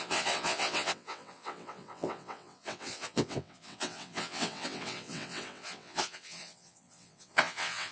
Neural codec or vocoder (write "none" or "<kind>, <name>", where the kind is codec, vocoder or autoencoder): vocoder, WaveNeXt